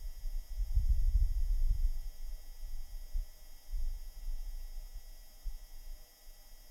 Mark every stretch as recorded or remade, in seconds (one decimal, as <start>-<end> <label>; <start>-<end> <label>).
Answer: 0.0-6.7 recorded